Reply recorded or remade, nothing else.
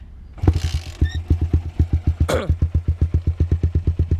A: recorded